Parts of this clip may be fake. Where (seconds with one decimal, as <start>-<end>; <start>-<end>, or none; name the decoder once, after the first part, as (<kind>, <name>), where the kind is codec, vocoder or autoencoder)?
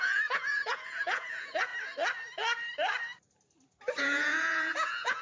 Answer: 0.0-1.7 (vocoder, Vocos); 4.0-5.2